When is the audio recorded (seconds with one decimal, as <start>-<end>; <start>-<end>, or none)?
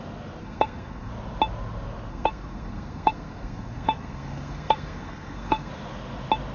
0.0-0.4; 1.1-2.1; 5.7-6.5